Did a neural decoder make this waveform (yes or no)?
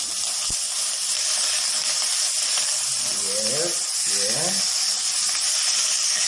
no